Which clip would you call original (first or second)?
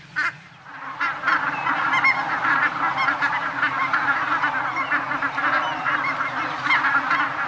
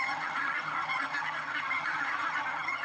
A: first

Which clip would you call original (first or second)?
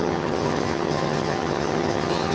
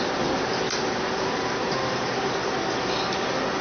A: second